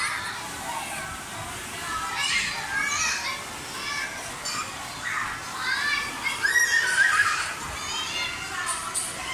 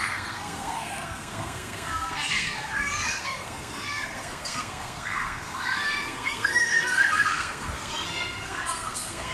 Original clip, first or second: first